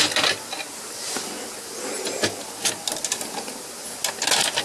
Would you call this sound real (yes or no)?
yes